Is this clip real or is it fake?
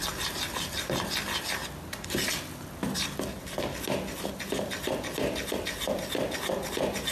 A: real